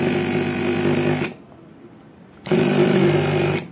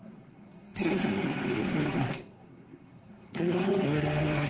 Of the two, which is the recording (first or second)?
first